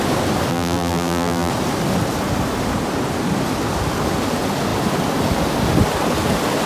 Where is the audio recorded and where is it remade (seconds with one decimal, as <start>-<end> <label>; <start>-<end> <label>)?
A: 0.0-0.5 recorded; 0.5-1.5 remade; 1.5-6.7 recorded